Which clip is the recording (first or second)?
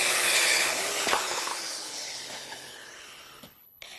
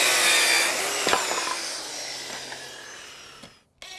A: second